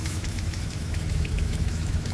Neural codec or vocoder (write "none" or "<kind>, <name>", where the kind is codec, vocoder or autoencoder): autoencoder, DAC-VAE